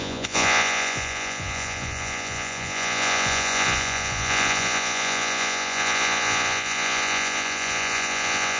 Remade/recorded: remade